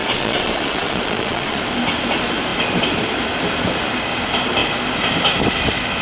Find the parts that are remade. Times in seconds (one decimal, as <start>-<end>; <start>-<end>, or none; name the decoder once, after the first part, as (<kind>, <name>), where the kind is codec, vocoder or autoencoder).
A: 0.0-1.6 (vocoder, Vocos)